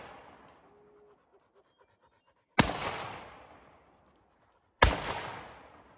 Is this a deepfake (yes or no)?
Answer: no